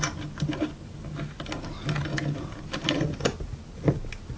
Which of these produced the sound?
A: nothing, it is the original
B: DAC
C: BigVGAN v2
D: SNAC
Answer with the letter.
A